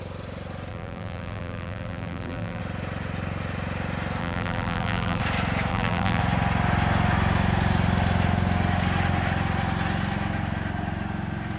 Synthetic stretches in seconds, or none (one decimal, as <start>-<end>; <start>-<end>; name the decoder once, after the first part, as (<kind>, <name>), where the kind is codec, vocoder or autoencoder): 0.7-2.6 (vocoder, BigVGAN v2); 4.2-5.2; 5.7-6.2